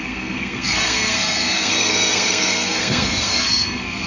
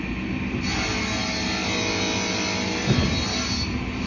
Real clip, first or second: second